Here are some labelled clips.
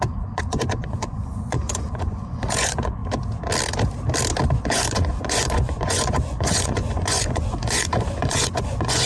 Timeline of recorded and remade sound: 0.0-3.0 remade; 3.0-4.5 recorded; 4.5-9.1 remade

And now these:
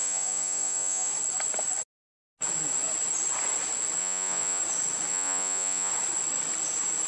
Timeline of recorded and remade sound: 0.0-1.1 remade; 1.1-4.0 recorded; 4.0-4.6 remade; 4.6-5.1 recorded; 5.1-5.9 remade; 5.9-7.1 recorded